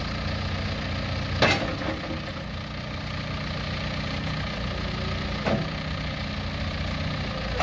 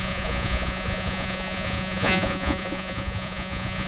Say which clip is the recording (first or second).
first